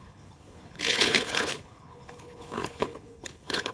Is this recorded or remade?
remade